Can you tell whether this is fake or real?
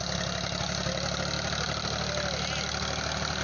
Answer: real